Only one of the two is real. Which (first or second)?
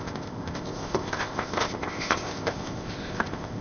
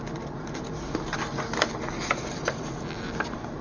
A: second